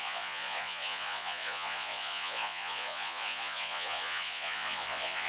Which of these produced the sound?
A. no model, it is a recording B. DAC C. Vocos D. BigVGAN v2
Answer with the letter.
C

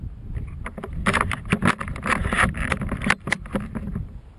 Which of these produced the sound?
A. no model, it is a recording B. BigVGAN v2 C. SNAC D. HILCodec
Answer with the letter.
B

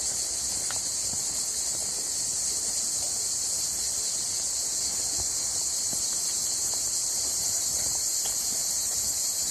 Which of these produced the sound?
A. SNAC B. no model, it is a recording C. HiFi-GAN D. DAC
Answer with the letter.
B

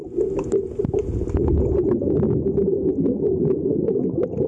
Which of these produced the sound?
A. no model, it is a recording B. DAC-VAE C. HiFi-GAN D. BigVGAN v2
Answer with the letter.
A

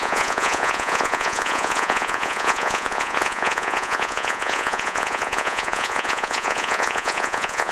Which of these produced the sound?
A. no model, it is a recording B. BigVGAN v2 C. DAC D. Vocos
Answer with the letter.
D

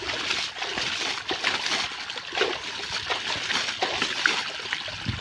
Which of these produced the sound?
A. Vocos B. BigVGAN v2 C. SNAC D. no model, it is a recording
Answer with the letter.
D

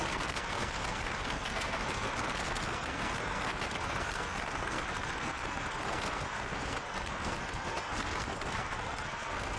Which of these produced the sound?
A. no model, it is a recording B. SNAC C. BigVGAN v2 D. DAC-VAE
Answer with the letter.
B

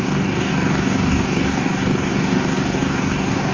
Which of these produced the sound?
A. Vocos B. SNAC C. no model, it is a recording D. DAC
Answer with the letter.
D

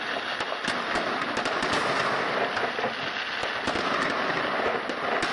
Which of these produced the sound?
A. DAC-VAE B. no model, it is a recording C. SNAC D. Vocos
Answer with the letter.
B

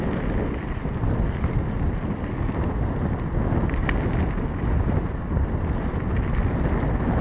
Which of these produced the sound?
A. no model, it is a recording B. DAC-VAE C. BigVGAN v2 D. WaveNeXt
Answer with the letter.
A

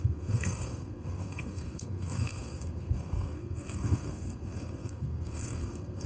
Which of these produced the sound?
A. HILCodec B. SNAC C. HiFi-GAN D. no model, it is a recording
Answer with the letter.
B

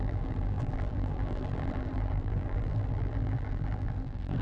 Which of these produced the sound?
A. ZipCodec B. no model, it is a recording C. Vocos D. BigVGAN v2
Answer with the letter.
D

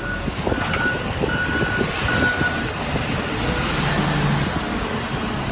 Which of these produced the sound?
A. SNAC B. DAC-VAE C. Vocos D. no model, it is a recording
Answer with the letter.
D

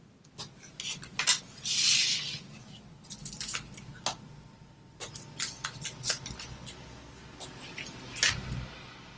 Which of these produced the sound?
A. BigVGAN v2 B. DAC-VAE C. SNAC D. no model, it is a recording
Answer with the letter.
D